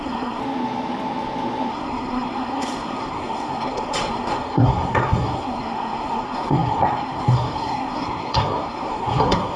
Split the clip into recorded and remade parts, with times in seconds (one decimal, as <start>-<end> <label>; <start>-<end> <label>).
0.0-0.4 remade; 0.4-1.7 recorded; 1.7-9.6 remade